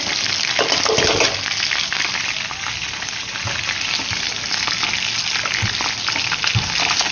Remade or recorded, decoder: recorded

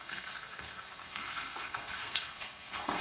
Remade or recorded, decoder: remade, codec, SNAC